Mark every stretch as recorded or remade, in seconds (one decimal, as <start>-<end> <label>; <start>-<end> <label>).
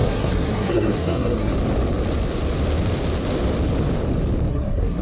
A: 0.0-1.5 remade; 1.5-4.5 recorded; 4.5-5.0 remade